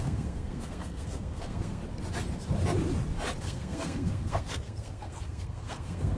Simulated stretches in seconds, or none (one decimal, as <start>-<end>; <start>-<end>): 0.0-1.8; 3.4-6.2